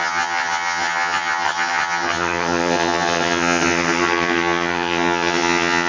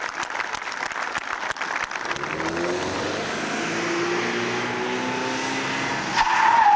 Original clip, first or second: second